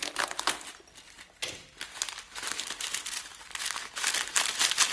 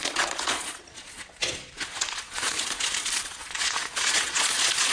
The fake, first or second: second